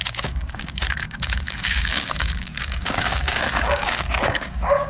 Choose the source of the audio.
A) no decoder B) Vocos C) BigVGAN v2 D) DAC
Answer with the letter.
D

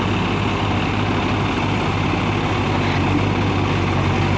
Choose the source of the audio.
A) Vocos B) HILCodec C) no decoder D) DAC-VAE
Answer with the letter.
C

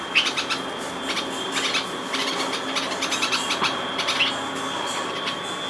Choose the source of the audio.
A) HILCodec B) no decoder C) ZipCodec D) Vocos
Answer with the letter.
B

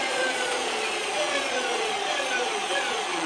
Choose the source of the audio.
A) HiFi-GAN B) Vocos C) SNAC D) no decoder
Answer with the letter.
B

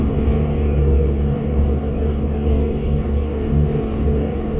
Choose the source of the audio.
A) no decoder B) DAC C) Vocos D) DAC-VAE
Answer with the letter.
B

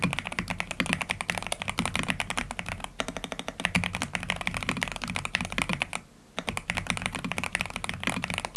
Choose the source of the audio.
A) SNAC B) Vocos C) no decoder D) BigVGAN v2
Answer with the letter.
C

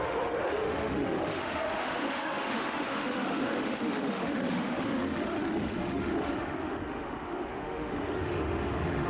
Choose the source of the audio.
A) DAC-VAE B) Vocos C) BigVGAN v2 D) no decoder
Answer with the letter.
A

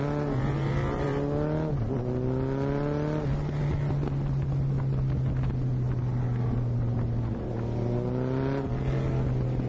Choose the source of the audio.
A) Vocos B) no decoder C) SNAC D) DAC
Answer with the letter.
B